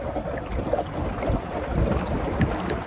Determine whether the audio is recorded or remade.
recorded